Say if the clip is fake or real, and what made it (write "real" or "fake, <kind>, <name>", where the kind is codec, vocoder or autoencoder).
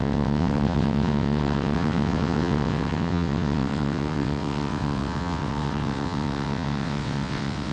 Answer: fake, vocoder, WaveNeXt